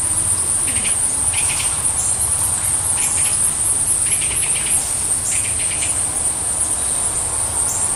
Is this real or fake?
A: real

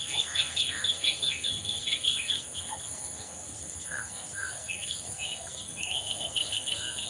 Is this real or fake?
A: fake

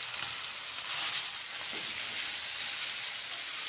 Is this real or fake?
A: real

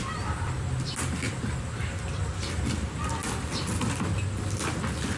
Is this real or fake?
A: real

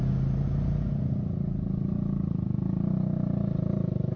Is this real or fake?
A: real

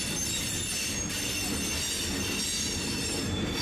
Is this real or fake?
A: real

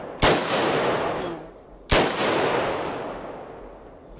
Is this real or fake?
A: real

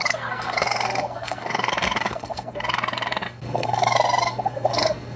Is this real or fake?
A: fake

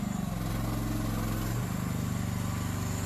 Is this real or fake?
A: real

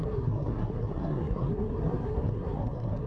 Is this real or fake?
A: fake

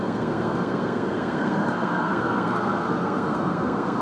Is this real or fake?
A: fake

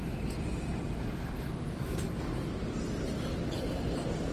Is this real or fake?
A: real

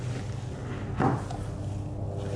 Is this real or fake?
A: real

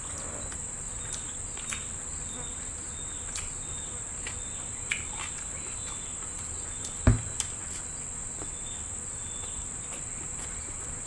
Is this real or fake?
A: real